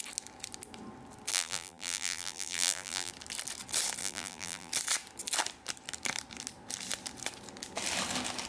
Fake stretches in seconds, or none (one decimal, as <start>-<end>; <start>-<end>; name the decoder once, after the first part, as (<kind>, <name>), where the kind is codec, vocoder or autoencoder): 1.3-3.1 (vocoder, BigVGAN v2); 4.0-4.7